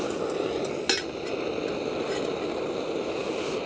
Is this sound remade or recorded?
recorded